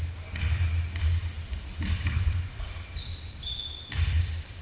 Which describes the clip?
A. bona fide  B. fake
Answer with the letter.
A